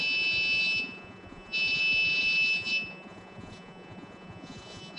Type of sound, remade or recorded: remade